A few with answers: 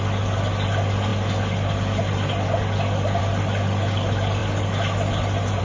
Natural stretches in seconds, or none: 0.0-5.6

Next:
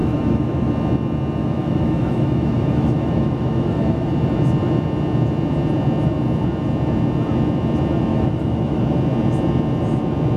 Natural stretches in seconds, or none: 0.7-1.4; 4.1-8.1; 8.8-10.4

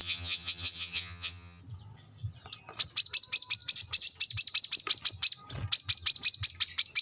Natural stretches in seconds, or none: 1.6-7.0

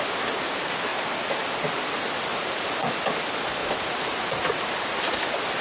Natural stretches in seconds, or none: 0.0-2.3; 3.0-3.6; 4.7-5.6

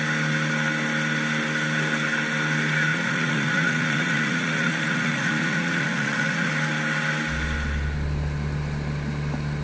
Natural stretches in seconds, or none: 0.0-2.9; 6.5-9.6